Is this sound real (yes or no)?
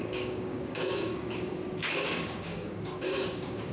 no